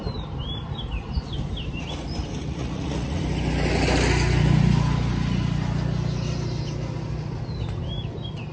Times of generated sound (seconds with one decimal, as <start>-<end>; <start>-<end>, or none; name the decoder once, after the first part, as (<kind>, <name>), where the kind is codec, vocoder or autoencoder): 2.4-3.2 (vocoder, Vocos)